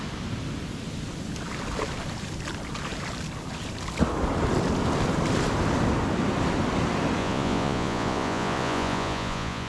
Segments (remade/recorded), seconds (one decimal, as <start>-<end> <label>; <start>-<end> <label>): 0.0-7.2 recorded; 7.2-9.7 remade